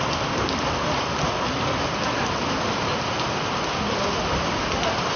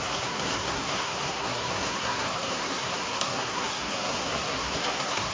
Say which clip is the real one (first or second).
first